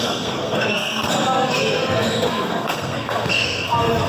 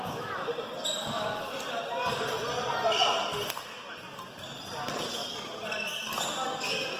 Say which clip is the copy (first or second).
first